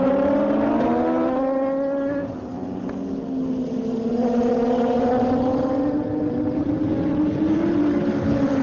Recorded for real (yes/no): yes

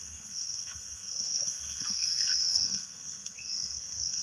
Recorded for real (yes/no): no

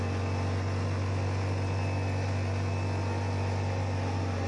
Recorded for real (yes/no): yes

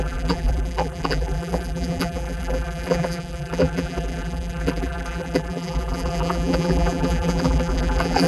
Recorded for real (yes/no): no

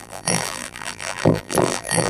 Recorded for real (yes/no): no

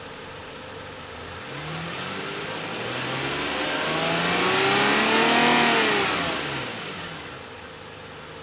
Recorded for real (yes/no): yes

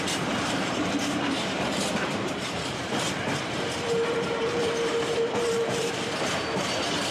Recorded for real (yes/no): no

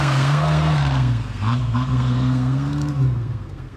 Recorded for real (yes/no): no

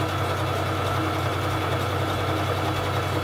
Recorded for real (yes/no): yes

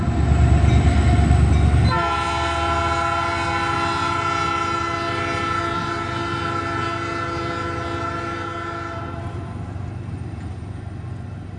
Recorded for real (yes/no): yes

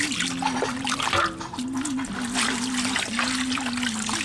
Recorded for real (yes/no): yes